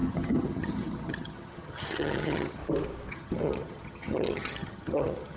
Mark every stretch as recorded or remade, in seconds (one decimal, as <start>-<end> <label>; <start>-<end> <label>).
0.0-2.6 remade; 2.6-3.1 recorded; 3.1-5.4 remade